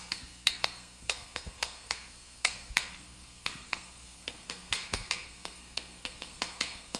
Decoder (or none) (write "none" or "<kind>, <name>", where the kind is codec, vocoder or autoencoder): codec, SNAC